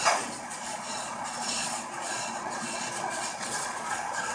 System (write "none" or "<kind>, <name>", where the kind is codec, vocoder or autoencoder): vocoder, Vocos